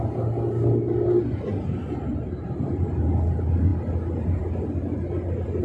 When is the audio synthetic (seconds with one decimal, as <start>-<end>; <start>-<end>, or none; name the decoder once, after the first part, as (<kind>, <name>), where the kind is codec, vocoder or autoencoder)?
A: none